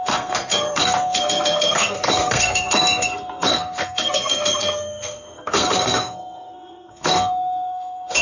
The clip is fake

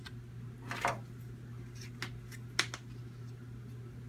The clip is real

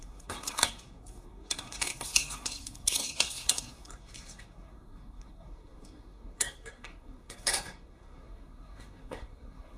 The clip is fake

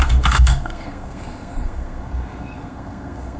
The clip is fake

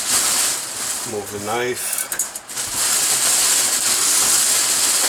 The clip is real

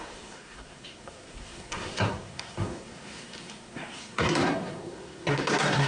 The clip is fake